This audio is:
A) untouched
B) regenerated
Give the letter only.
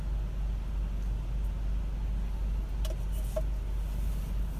A